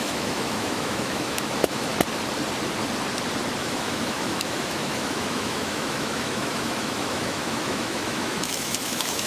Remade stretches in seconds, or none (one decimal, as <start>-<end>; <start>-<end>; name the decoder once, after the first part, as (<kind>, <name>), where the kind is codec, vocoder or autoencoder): 0.0-1.9 (autoencoder, DAC-VAE); 3.6-9.3

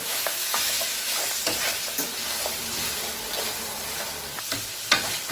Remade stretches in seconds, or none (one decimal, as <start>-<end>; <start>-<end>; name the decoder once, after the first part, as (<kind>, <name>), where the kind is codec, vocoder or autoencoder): 0.0-1.1 (autoencoder, DAC-VAE)

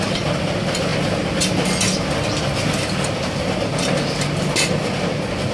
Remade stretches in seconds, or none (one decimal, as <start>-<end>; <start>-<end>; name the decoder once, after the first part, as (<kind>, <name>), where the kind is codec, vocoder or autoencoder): none

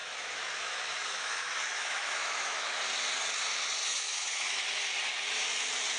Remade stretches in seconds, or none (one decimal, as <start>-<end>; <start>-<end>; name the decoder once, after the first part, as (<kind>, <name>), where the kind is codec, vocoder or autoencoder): 0.0-2.8 (autoencoder, DAC-VAE); 3.8-4.6

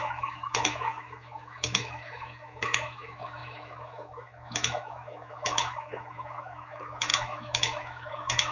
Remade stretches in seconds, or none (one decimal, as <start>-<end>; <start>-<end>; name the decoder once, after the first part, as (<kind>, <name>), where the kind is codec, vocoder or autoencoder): 0.0-8.5 (autoencoder, DAC-VAE)

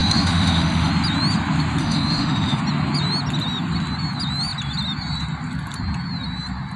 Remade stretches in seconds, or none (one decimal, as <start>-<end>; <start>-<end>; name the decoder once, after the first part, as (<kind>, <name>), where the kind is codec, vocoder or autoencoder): 0.0-0.9 (autoencoder, DAC-VAE); 1.8-2.6

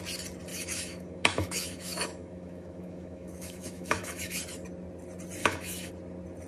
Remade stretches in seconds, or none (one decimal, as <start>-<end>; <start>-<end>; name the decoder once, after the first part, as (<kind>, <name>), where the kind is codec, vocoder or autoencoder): 0.5-4.4 (autoencoder, DAC-VAE); 5.4-5.9